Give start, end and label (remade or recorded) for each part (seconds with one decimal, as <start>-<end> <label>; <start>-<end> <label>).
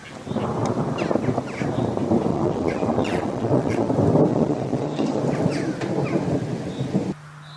0.0-2.3 recorded; 2.3-3.9 remade; 3.9-4.3 recorded; 4.3-5.2 remade; 5.2-7.6 recorded